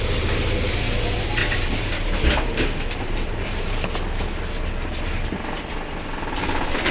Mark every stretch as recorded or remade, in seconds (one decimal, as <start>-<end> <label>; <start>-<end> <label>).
0.0-1.4 recorded; 1.4-3.8 remade; 3.8-6.9 recorded